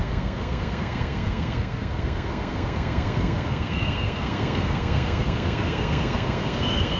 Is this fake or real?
fake